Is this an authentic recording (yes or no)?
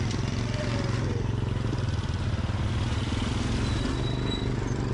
yes